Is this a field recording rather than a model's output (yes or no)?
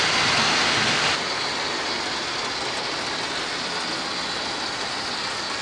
yes